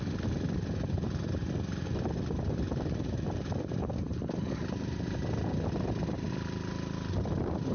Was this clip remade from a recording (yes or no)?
no